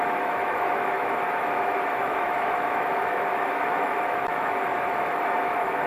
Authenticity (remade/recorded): remade